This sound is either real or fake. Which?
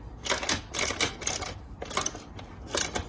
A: real